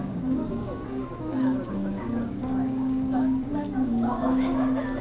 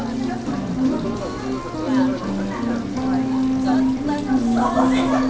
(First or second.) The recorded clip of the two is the second